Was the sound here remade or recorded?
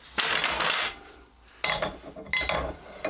recorded